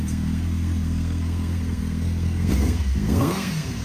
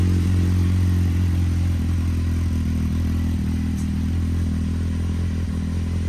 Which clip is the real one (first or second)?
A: second